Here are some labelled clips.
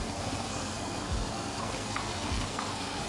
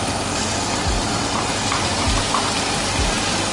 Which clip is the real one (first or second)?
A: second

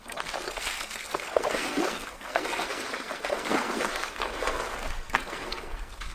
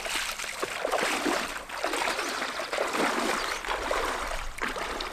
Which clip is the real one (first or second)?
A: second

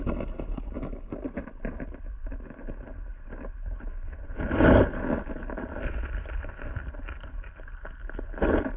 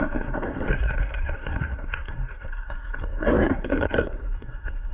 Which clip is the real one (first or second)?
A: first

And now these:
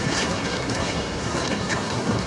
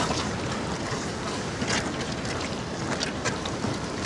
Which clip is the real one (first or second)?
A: second